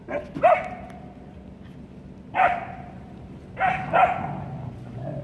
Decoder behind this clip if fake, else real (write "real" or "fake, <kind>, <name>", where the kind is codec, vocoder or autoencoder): real